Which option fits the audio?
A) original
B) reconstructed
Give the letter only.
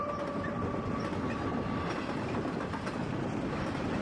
A